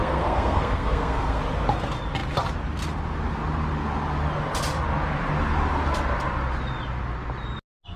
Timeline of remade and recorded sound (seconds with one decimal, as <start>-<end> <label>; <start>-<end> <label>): 0.0-1.4 remade; 1.4-8.0 recorded